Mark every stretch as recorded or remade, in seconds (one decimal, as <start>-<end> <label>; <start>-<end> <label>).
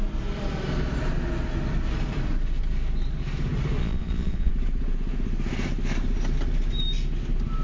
0.0-3.8 recorded; 3.8-4.5 remade; 4.5-7.6 recorded